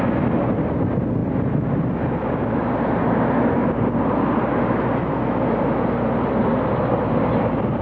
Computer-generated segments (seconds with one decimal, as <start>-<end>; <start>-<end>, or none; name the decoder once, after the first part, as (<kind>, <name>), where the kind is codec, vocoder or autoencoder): none